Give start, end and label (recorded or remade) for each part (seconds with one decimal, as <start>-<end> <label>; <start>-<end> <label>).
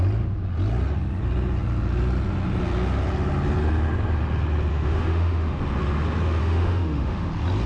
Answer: 0.0-4.7 recorded; 4.7-5.6 remade; 5.6-6.4 recorded; 6.4-7.3 remade; 7.3-7.7 recorded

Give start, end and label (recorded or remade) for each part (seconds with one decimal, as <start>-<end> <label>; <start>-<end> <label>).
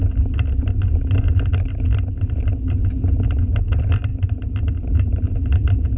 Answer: 0.0-6.0 recorded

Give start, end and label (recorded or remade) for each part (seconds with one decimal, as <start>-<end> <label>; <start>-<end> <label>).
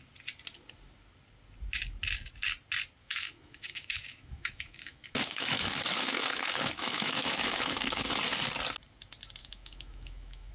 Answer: 0.0-3.0 recorded; 3.0-8.1 remade; 8.1-9.4 recorded; 9.4-10.5 remade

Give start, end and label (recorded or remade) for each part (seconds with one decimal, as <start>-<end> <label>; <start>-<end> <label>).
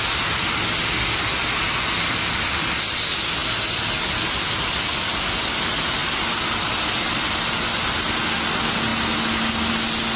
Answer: 0.0-10.2 recorded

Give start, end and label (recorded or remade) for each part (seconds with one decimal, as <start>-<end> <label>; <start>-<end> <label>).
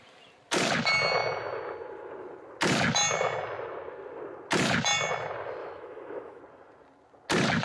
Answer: 0.0-5.6 recorded; 5.6-6.4 remade; 6.4-7.6 recorded